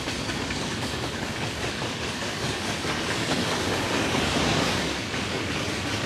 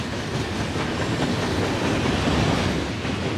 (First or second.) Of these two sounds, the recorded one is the second